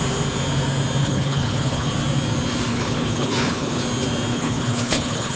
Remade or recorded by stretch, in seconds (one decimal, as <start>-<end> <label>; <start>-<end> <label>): 0.0-1.0 recorded; 1.0-1.9 remade; 1.9-2.7 recorded; 2.7-3.8 remade; 3.8-4.3 recorded; 4.3-5.4 remade